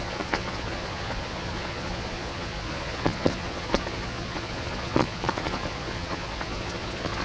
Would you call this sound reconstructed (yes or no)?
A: yes